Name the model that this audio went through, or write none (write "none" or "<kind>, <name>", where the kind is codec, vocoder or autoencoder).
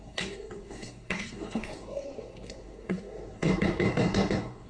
codec, SNAC